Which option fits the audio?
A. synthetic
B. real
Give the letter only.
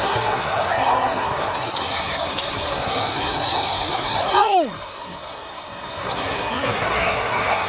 A